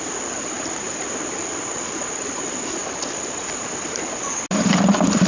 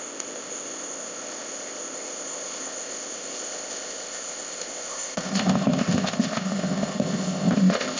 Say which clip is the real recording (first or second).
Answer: first